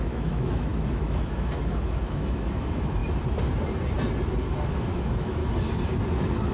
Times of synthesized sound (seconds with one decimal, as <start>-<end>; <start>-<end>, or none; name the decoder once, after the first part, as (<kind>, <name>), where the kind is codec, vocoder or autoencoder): 0.0-3.0 (autoencoder, DAC-VAE); 4.7-5.4